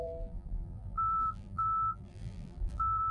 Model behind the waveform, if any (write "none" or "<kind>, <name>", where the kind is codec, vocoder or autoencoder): vocoder, BigVGAN v2